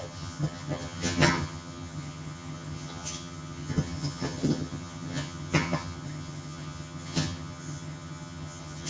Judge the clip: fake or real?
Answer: fake